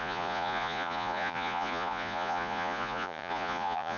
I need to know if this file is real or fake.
fake